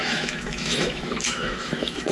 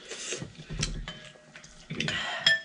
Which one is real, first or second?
second